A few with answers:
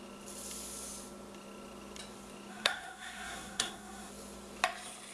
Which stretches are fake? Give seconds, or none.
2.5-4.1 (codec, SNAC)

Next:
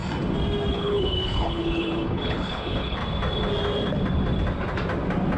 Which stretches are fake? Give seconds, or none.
0.7-3.0 (codec, HILCodec)

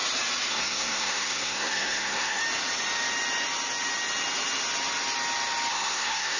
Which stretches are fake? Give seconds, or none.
0.5-2.4 (codec, SNAC); 5.7-6.4

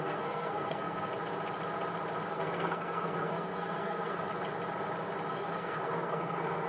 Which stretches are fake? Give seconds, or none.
0.0-1.1 (codec, SNAC); 2.3-4.3; 5.3-6.7

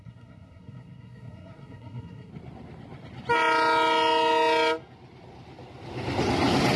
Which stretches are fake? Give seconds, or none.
0.0-2.3 (codec, SNAC)

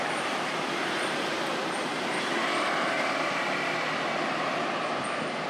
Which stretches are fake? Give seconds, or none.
0.0-1.6 (vocoder, BigVGAN v2); 4.3-5.5

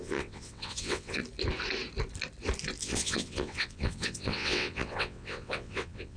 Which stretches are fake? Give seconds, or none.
0.0-1.2 (vocoder, WaveNeXt); 2.8-6.2

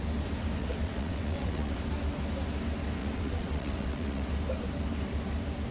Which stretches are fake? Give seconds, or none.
0.6-1.8 (vocoder, WaveNeXt); 3.0-4.3